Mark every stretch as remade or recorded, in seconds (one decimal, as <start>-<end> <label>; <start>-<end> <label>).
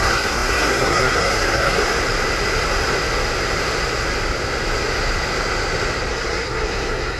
0.0-1.8 remade; 1.8-6.1 recorded; 6.1-7.2 remade